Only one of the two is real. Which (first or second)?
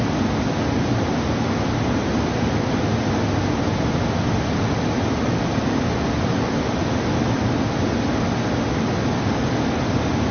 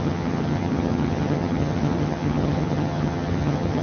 first